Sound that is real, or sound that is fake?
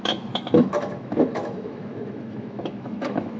fake